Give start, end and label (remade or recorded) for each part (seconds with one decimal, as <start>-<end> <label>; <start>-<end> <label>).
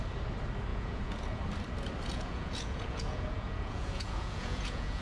0.0-0.7 recorded; 0.7-1.4 remade; 1.4-2.1 recorded; 2.1-5.0 remade